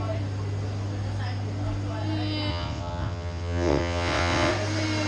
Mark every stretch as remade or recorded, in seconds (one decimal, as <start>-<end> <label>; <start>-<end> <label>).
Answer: 0.0-2.5 recorded; 2.5-4.5 remade; 4.5-5.1 recorded